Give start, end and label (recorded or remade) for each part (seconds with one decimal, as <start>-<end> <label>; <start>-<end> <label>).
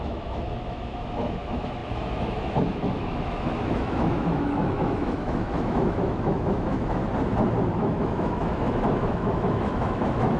0.0-7.0 remade; 7.0-7.7 recorded; 7.7-10.4 remade